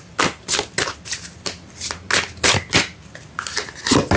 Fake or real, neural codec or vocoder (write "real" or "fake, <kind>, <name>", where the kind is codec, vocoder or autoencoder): real